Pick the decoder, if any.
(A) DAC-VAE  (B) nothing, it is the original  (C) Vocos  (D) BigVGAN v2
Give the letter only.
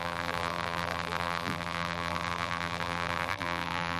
D